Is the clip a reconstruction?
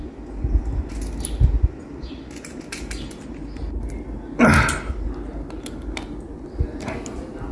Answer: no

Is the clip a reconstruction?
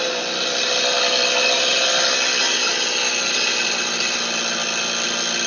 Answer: no